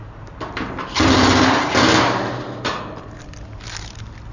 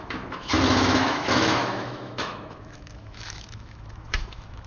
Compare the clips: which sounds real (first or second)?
first